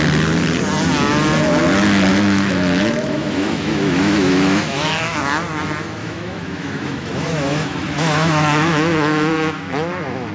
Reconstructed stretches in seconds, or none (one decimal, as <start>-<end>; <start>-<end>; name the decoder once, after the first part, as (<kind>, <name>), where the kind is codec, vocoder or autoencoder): 2.1-5.2 (autoencoder, DAC-VAE); 6.0-10.3